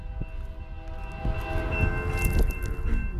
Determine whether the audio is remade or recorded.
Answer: recorded